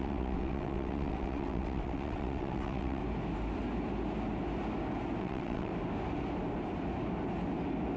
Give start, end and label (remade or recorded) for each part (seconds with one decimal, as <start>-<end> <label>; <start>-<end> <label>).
0.0-3.0 remade; 3.0-5.2 recorded; 5.2-5.7 remade; 5.7-8.0 recorded